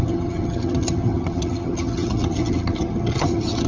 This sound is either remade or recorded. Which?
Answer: remade